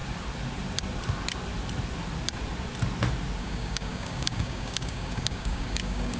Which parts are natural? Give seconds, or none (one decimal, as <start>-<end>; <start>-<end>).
0.0-3.4